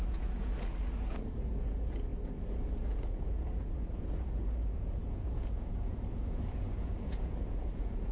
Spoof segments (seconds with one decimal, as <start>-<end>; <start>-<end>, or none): 0.0-8.1